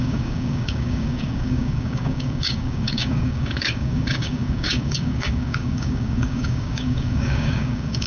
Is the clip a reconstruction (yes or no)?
yes